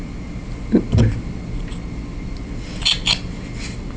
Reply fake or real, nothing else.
real